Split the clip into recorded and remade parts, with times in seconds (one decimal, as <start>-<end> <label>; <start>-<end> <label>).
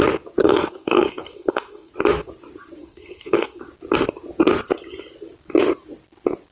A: 0.0-0.4 recorded; 0.4-1.9 remade; 1.9-2.8 recorded; 2.8-3.6 remade; 3.6-6.5 recorded